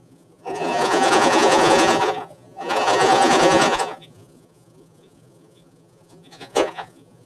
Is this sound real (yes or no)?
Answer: no